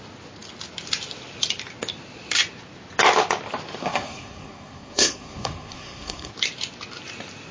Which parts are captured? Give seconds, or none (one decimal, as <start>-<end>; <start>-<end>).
0.0-3.8; 6.3-7.5